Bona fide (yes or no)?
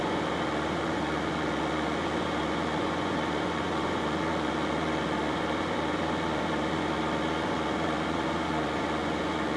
no